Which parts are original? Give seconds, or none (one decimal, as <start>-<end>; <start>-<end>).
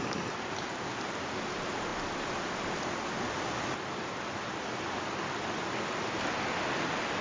0.0-7.2